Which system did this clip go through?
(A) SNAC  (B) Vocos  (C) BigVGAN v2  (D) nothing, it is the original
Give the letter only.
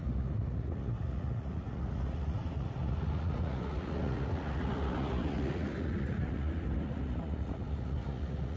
B